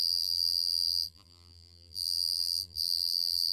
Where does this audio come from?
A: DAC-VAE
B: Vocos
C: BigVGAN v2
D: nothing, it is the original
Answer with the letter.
C